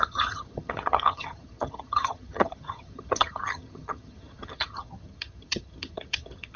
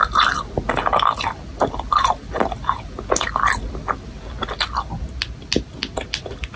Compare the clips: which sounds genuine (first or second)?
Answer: second